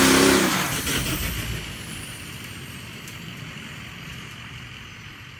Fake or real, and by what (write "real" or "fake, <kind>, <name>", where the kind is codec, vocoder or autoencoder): fake, vocoder, BigVGAN v2